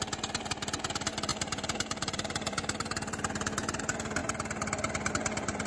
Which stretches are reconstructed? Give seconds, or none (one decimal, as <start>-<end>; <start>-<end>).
1.3-3.8